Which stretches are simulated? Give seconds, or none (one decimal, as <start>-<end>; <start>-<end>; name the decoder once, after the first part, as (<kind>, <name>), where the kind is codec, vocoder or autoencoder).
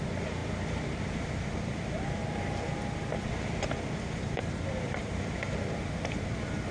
0.0-6.7 (vocoder, BigVGAN v2)